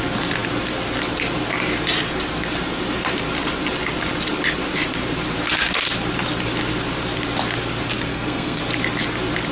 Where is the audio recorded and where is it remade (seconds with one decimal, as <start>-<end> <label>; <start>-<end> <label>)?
0.0-8.1 recorded; 8.1-8.6 remade; 8.6-9.5 recorded